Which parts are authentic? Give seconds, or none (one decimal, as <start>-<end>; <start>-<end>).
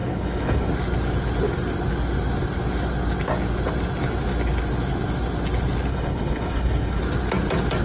0.7-5.9; 7.0-7.8